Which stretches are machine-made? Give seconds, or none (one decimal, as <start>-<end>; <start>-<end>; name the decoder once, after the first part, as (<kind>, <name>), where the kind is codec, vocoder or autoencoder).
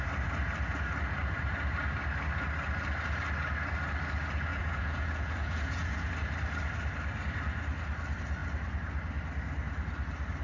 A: 4.5-6.1 (vocoder, Vocos)